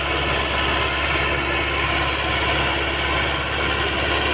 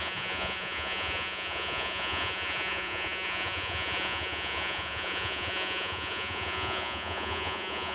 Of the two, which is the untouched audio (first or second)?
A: first